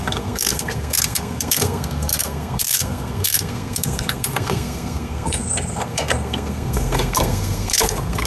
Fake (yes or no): yes